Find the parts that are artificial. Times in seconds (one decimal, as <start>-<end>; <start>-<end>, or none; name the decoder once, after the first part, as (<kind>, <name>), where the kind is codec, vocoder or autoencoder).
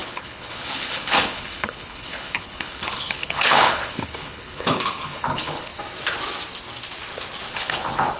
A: 0.0-5.7 (codec, HILCodec); 7.5-8.2